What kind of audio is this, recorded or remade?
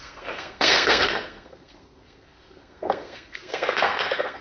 remade